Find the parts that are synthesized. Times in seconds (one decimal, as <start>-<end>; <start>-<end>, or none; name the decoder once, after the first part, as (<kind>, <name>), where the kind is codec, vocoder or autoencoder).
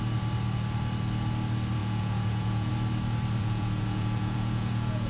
1.8-2.7 (vocoder, Vocos); 3.4-5.1